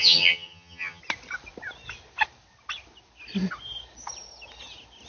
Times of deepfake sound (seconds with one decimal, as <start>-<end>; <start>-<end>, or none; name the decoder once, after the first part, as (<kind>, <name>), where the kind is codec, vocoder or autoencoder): 0.0-1.0 (vocoder, HiFi-GAN)

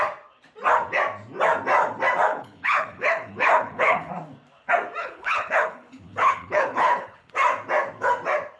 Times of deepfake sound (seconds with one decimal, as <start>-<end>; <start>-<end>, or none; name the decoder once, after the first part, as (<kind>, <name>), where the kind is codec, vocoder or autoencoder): 2.3-4.1 (codec, HILCodec); 5.0-7.3

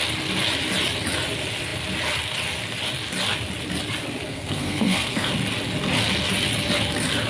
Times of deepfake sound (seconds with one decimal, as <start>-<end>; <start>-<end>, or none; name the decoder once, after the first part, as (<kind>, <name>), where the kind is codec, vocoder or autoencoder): 4.3-5.3 (codec, SNAC)

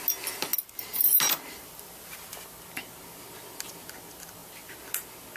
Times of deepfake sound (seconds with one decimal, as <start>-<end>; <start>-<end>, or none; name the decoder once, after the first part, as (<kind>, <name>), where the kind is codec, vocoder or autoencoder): none

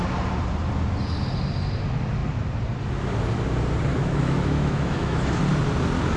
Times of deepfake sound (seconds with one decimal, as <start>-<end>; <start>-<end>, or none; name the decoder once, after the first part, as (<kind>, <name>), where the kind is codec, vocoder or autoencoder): 3.9-5.4 (autoencoder, DAC-VAE)

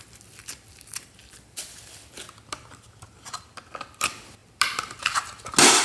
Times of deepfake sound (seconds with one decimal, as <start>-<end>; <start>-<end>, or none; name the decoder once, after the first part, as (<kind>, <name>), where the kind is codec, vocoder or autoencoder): none